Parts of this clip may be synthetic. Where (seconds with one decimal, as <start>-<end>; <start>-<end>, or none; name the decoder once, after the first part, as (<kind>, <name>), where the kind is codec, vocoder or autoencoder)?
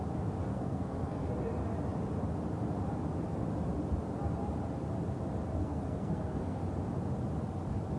0.5-1.3 (codec, SNAC); 5.6-6.6